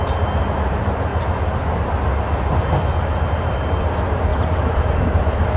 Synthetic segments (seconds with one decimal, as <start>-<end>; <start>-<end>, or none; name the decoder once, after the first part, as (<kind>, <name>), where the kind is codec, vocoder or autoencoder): 0.0-1.1 (vocoder, BigVGAN v2); 3.2-5.6